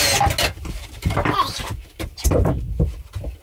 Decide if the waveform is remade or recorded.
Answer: recorded